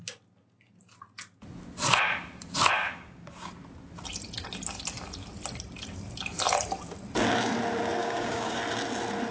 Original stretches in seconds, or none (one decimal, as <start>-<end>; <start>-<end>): 0.0-2.8; 3.5-8.0; 8.6-9.3